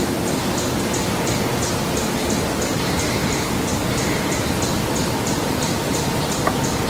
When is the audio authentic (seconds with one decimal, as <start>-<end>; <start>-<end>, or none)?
0.0-3.2; 3.9-6.9